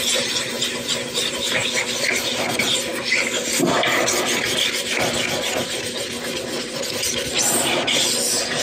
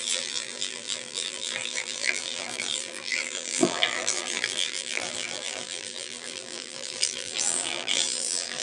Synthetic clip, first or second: second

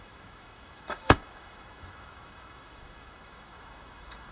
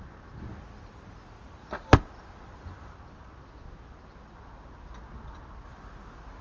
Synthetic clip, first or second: first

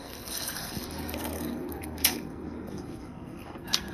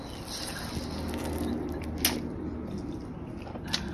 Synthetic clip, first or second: first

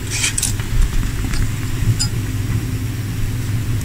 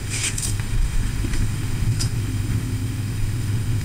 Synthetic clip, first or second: second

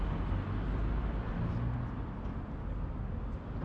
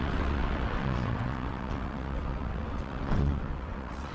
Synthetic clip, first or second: second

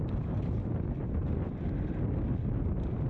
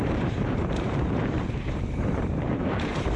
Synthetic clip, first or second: second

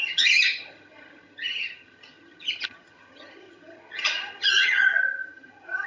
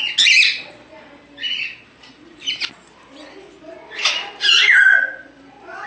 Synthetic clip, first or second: first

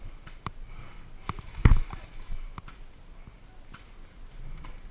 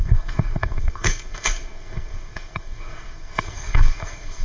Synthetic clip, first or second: second